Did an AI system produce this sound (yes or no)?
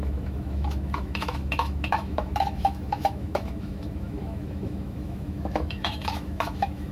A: yes